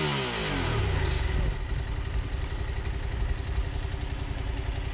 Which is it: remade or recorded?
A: recorded